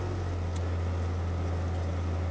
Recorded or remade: recorded